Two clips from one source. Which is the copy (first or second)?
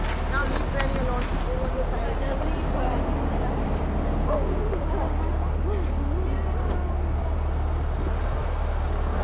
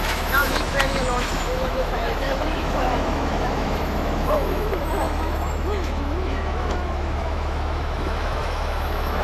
second